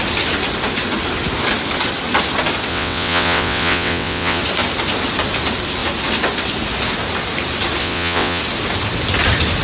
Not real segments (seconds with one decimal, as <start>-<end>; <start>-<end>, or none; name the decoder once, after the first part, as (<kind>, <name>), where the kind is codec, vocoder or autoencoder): 2.7-4.4 (vocoder, WaveNeXt); 7.8-8.4